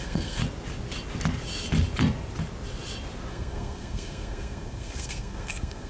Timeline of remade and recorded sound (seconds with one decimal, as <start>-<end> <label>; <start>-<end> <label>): 0.0-0.4 remade; 0.4-3.3 recorded; 3.3-5.9 remade